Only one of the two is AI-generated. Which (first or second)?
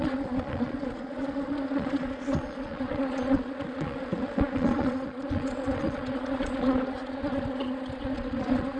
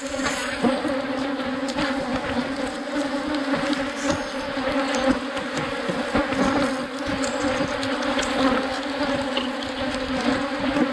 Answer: first